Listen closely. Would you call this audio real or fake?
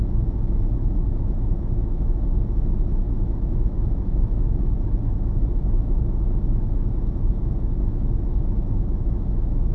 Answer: fake